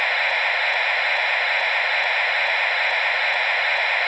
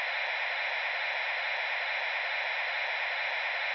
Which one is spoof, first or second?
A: first